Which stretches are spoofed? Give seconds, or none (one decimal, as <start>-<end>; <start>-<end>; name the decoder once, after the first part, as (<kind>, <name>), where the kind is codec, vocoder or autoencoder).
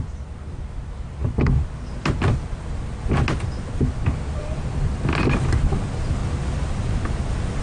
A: none